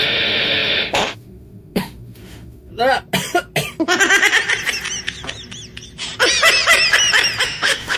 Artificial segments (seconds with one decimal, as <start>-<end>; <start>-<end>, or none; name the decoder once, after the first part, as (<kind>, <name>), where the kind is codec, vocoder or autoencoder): 0.0-2.7 (autoencoder, DAC-VAE); 7.4-8.0